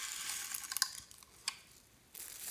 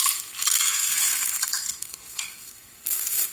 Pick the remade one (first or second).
second